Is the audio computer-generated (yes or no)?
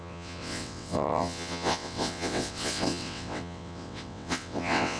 yes